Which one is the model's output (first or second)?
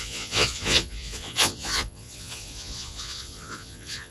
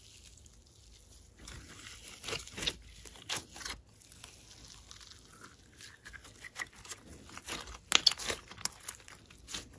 first